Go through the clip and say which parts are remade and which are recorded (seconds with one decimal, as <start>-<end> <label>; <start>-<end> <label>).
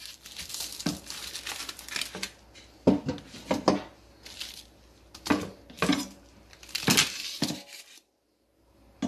0.0-9.1 recorded